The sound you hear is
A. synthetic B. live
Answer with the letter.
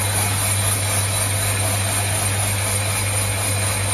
B